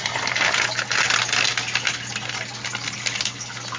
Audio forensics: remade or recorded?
recorded